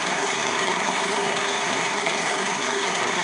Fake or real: fake